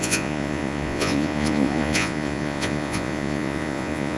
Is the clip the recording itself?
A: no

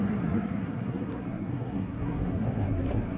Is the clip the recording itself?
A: no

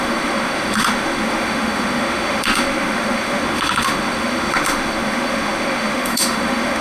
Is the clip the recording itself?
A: no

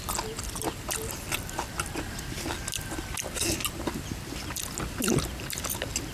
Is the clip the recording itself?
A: yes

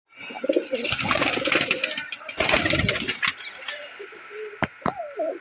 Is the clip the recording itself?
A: yes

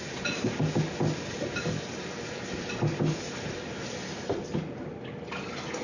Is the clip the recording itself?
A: yes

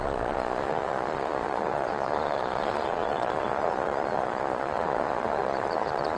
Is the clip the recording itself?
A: no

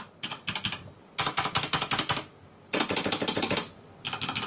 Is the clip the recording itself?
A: yes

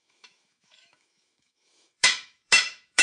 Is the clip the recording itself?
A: no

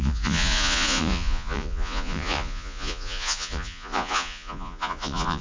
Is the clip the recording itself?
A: no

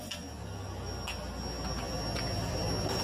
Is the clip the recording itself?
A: yes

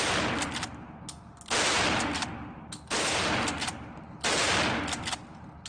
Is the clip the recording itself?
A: yes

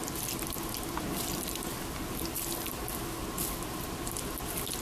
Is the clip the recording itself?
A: yes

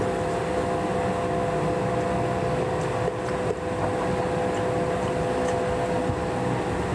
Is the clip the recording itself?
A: yes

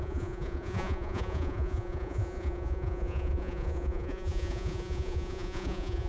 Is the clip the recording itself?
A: no